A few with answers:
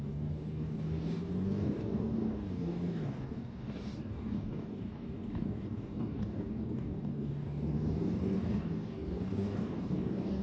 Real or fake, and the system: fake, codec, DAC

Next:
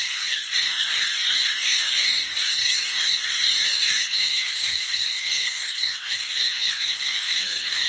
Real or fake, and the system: fake, codec, DAC